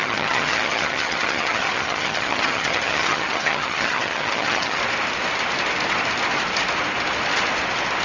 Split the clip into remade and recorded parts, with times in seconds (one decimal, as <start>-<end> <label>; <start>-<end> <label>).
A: 0.0-4.8 remade; 4.8-8.0 recorded